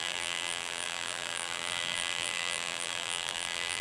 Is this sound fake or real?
fake